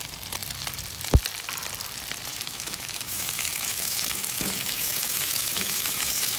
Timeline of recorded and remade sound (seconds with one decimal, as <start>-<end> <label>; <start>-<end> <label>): 0.0-2.3 recorded; 2.3-6.4 remade